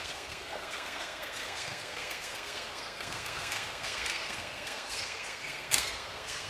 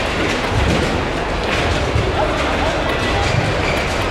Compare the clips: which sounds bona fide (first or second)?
second